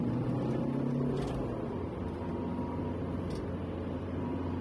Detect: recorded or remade recorded